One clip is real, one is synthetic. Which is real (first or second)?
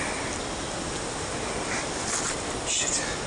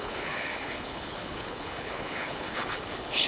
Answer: first